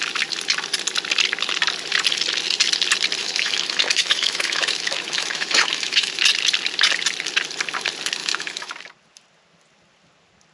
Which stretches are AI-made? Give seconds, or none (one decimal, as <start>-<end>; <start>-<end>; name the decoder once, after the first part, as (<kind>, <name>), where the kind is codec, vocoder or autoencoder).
3.2-6.2 (autoencoder, DAC-VAE); 8.2-8.7